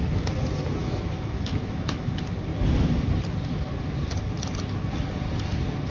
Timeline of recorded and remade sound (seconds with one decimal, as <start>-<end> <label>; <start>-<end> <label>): 0.0-0.8 recorded; 0.8-2.1 remade; 2.1-5.9 recorded